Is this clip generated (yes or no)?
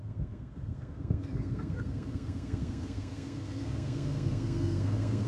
yes